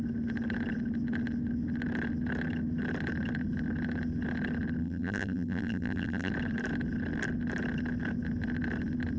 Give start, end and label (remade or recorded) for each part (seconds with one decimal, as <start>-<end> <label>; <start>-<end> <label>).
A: 0.0-4.8 recorded; 4.8-6.3 remade; 6.3-9.2 recorded